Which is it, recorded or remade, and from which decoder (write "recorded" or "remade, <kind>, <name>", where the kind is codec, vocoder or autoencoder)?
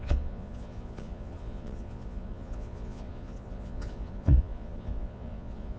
remade, vocoder, Vocos